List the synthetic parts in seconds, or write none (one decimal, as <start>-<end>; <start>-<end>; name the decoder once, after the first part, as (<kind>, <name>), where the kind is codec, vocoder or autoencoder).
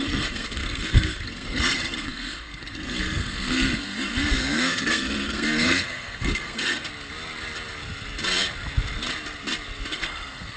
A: 0.0-6.9 (codec, SNAC); 9.9-10.6